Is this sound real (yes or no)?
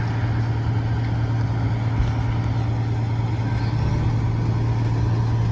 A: yes